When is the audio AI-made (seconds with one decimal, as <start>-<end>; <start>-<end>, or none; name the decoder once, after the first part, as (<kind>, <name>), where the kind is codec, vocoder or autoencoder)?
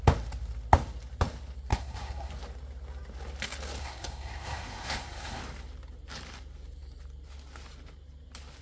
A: 1.7-2.3 (codec, SNAC); 3.8-5.4